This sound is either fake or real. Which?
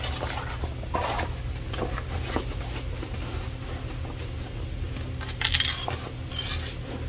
real